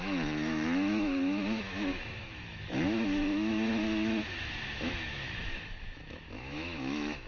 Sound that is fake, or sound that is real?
fake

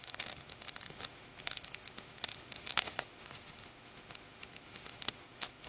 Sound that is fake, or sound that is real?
fake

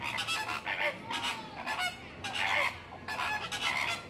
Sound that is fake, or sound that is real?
real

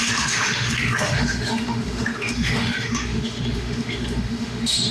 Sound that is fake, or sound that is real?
fake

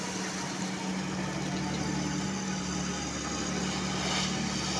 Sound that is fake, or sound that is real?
real